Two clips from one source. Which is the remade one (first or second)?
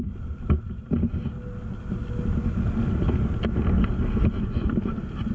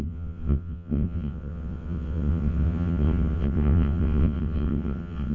second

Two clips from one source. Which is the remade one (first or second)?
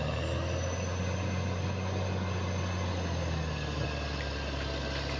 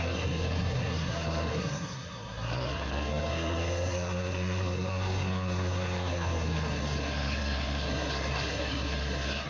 second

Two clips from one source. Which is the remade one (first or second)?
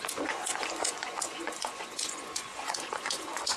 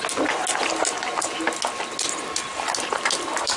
first